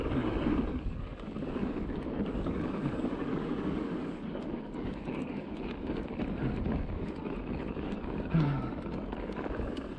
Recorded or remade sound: remade